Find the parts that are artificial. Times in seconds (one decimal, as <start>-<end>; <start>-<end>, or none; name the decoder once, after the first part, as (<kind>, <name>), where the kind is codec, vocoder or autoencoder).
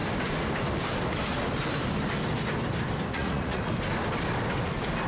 3.1-3.7 (vocoder, Vocos)